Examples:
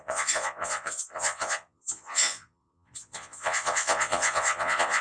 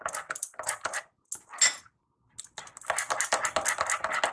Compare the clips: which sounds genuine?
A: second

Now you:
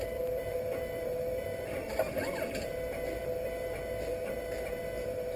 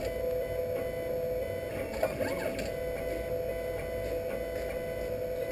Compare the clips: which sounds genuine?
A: second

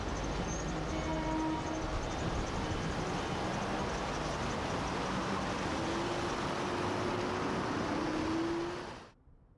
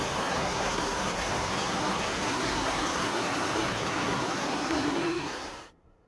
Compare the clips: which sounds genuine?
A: first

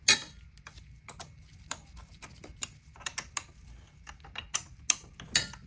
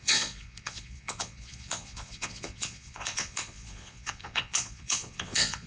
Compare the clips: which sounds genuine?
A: first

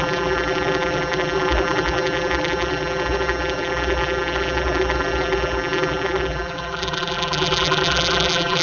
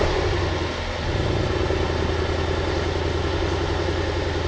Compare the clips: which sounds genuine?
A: second